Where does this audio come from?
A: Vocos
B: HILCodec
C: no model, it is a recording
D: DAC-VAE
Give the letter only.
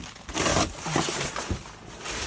C